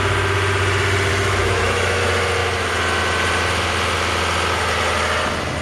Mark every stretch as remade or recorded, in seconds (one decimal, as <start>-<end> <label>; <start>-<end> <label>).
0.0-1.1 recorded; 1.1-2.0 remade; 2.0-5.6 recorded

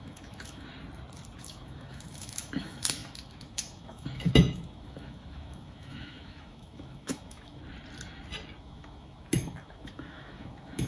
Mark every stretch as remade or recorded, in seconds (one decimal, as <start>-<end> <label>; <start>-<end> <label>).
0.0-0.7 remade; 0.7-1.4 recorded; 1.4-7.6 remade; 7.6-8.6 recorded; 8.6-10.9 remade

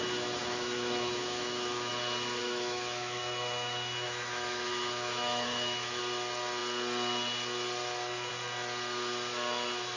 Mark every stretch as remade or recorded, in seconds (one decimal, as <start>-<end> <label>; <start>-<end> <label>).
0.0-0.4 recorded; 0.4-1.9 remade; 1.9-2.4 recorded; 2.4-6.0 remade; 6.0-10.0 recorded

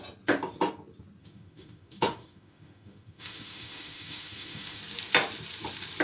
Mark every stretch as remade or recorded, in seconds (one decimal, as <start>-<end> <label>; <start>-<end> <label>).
0.0-1.2 recorded; 1.2-4.8 remade; 4.8-6.0 recorded

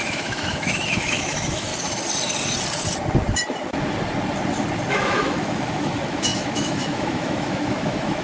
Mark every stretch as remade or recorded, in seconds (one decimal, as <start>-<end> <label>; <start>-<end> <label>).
0.0-1.7 remade; 1.7-4.9 recorded; 4.9-8.2 remade

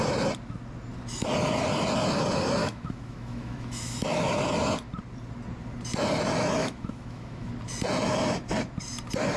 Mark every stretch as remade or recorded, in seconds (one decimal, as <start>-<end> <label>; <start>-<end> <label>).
0.0-2.6 recorded; 2.6-4.3 remade; 4.3-6.6 recorded; 6.6-7.5 remade; 7.5-9.4 recorded